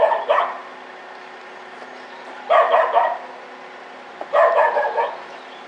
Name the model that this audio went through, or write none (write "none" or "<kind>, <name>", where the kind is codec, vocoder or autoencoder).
none